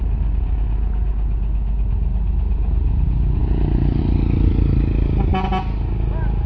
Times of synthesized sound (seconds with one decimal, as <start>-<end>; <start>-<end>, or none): none